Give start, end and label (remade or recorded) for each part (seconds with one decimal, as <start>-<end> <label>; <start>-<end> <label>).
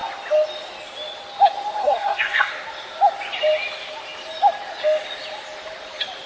0.0-1.8 recorded; 1.8-2.5 remade; 2.5-6.3 recorded